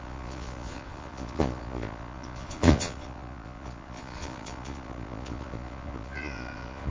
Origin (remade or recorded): remade